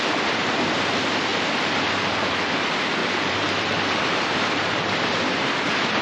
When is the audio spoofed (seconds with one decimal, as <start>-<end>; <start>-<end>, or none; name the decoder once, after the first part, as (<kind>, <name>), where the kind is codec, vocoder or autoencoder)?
3.0-5.5 (vocoder, BigVGAN v2)

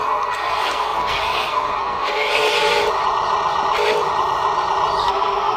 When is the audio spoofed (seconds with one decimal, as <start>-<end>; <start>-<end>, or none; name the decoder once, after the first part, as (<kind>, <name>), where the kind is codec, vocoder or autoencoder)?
0.0-2.8 (codec, SNAC); 5.0-5.6

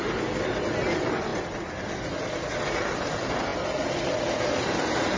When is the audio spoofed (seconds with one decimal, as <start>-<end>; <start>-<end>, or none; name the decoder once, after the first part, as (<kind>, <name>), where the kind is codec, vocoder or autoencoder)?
none

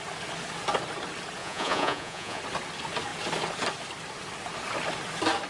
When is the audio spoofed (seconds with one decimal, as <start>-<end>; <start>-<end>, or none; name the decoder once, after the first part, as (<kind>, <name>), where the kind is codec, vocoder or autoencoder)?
1.4-2.4 (vocoder, Vocos)